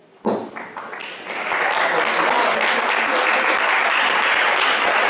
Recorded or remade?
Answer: recorded